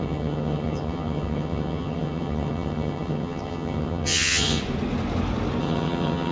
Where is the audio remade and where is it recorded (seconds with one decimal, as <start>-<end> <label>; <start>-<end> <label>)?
0.0-4.6 remade; 4.6-5.6 recorded; 5.6-6.3 remade